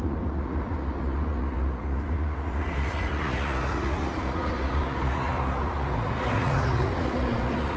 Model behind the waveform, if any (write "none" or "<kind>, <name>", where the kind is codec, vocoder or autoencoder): vocoder, Vocos